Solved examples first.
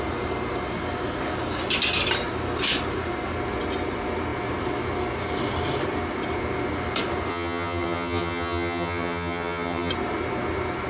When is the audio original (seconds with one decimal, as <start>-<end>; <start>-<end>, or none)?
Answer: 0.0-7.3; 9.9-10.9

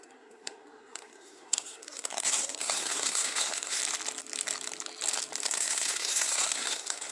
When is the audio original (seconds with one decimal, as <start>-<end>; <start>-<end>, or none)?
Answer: 3.8-5.4

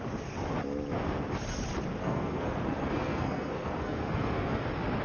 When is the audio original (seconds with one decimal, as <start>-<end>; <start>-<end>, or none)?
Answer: 0.0-2.0; 4.6-5.0